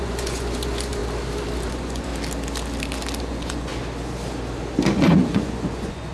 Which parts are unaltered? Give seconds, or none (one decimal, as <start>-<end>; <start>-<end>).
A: 1.0-1.7; 2.1-3.2; 3.7-5.0